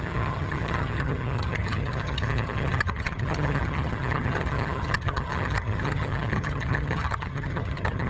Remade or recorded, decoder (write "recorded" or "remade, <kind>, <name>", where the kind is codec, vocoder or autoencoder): remade, vocoder, HiFi-GAN